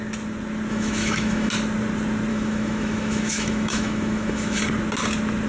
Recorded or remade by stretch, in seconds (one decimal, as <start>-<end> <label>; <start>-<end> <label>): 0.0-0.7 recorded; 0.7-1.5 remade; 1.5-2.3 recorded; 2.3-4.6 remade; 4.6-5.5 recorded